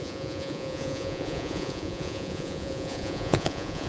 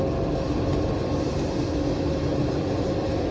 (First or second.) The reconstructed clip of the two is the first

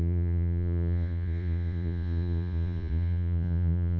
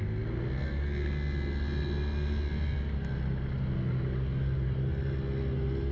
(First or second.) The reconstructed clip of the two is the first